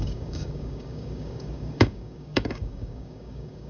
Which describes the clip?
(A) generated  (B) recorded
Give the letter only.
A